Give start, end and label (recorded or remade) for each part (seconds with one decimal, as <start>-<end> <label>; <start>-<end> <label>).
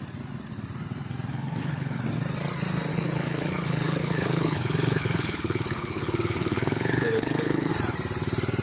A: 0.0-1.3 recorded; 1.3-2.0 remade; 2.0-2.9 recorded; 2.9-7.7 remade; 7.7-8.6 recorded